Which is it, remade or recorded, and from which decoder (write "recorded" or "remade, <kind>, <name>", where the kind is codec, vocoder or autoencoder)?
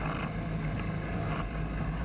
recorded